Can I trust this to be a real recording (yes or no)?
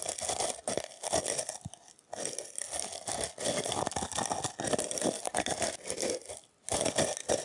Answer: yes